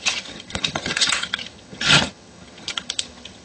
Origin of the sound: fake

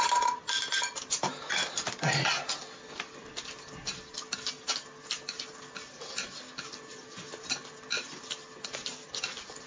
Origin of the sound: real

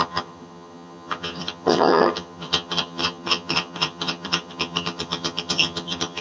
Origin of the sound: fake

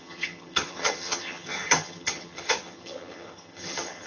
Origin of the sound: fake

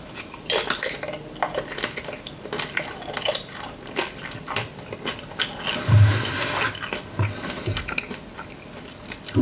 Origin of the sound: real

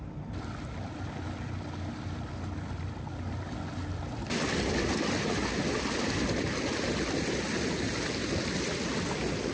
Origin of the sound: real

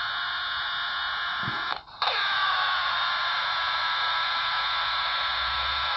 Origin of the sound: real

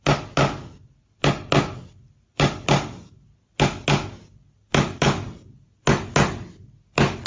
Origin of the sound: real